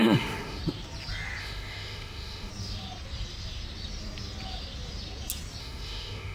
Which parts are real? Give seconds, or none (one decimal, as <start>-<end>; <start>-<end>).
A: 0.6-1.4; 2.5-5.6